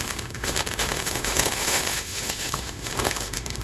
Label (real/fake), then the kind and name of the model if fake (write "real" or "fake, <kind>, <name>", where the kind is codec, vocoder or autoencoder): fake, autoencoder, DAC-VAE